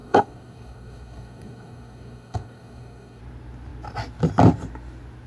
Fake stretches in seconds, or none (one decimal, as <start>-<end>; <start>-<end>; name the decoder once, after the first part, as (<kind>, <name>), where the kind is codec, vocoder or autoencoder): 0.0-3.2 (codec, DAC)